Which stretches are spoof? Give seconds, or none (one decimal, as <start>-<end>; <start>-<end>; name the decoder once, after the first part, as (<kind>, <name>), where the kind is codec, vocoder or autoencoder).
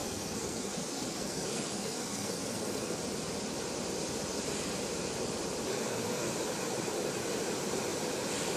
0.0-3.0 (codec, SNAC); 5.7-6.3